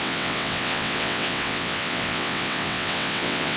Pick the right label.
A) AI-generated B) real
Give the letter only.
A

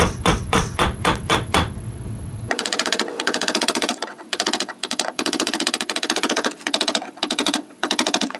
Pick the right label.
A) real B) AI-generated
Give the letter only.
B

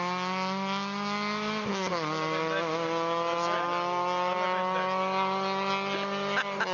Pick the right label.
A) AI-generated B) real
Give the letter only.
B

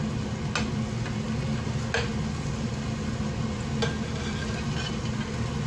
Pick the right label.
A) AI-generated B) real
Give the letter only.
B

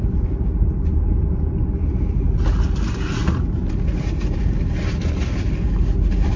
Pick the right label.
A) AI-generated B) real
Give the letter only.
B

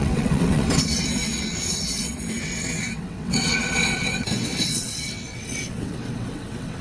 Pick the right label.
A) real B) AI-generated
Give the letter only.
B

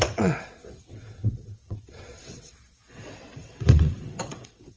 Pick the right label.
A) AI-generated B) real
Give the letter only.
A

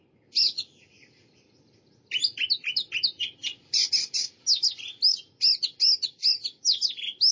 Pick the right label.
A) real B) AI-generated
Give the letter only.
A